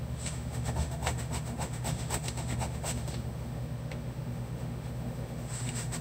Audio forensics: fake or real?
fake